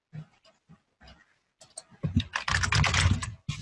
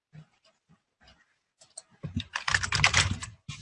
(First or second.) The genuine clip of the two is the first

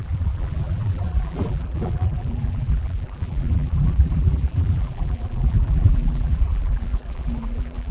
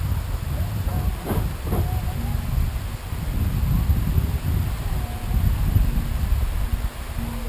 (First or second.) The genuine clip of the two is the second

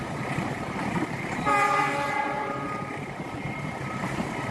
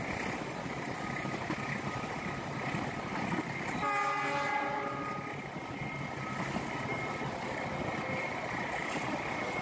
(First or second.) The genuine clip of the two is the second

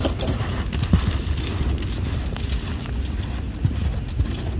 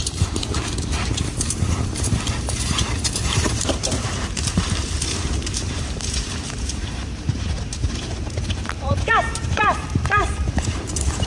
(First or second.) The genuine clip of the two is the first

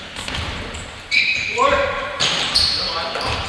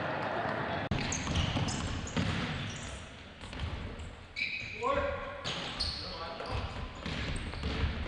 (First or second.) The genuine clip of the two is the second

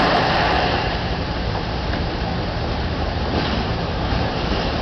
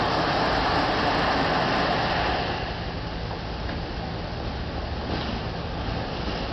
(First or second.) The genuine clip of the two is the second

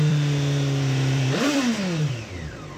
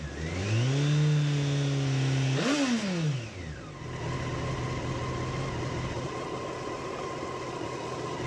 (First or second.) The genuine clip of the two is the second